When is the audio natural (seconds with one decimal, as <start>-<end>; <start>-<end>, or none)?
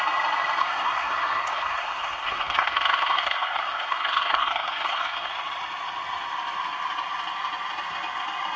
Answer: 0.0-0.6; 5.3-8.6